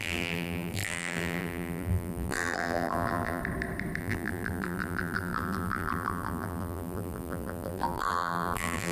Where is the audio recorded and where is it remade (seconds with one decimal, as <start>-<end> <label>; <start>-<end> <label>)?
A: 0.0-3.4 remade; 3.4-4.0 recorded; 4.0-8.9 remade